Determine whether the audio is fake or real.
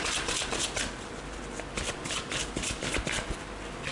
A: real